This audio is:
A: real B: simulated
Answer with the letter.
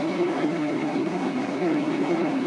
B